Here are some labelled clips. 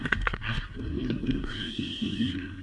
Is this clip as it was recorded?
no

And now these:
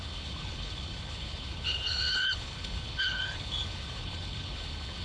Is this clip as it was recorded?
no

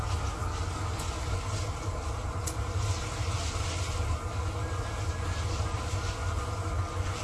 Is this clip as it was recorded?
yes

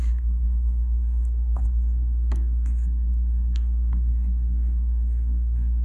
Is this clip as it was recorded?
no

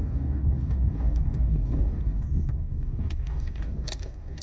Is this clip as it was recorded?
no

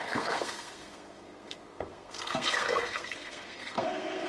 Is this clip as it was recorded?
no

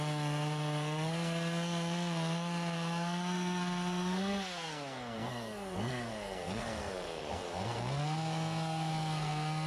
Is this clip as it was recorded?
no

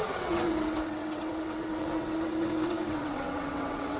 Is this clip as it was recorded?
no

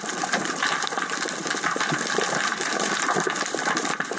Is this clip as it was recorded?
no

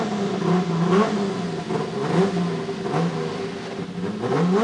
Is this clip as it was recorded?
yes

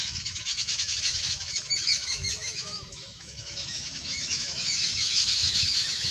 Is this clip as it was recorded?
no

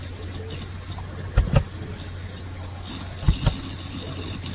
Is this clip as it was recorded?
yes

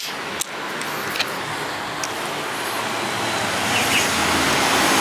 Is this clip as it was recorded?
yes